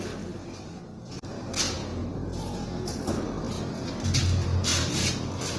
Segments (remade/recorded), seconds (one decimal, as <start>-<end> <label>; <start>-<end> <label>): 0.0-5.6 recorded

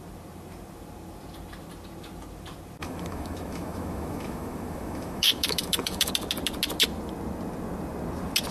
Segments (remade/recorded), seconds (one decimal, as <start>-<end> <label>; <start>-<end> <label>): 0.0-2.8 recorded; 2.8-6.1 remade; 6.1-8.5 recorded

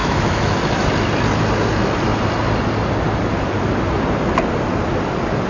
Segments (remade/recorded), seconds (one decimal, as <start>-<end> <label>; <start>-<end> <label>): 0.0-0.6 remade; 0.6-5.5 recorded

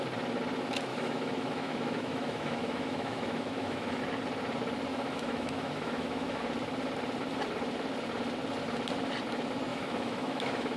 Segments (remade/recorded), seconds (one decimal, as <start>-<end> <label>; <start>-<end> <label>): 0.0-0.9 recorded; 0.9-4.0 remade; 4.0-4.9 recorded; 4.9-6.4 remade; 6.4-9.7 recorded; 9.7-10.8 remade